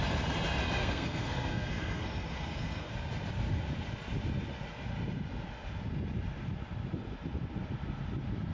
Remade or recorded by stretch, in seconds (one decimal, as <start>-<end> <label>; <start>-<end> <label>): 0.0-0.8 recorded; 0.8-2.9 remade; 2.9-8.5 recorded